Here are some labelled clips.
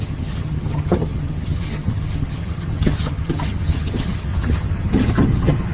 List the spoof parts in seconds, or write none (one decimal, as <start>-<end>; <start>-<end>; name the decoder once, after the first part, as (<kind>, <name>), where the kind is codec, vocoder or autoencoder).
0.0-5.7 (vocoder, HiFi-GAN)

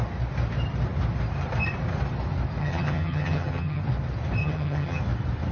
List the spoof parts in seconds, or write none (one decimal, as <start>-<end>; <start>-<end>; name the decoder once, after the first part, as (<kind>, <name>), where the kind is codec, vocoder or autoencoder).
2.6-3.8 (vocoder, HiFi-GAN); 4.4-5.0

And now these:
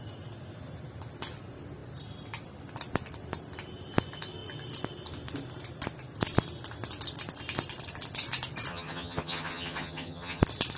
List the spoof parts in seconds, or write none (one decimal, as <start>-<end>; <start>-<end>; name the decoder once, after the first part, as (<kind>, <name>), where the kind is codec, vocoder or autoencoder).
8.7-10.4 (vocoder, HiFi-GAN)

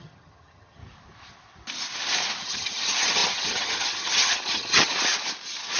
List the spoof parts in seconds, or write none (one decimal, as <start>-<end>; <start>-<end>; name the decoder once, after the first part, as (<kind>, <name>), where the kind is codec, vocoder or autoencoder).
0.0-0.8 (vocoder, HiFi-GAN); 2.4-4.9

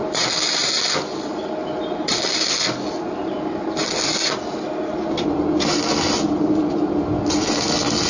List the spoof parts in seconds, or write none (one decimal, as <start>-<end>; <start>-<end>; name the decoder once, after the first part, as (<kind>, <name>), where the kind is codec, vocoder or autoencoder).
none

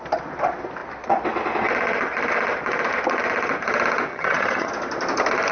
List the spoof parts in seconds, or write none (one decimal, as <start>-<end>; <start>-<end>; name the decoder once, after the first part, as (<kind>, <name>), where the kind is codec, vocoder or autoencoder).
4.1-4.7 (vocoder, HiFi-GAN)